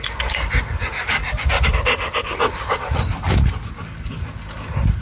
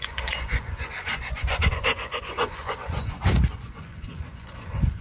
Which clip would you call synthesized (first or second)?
second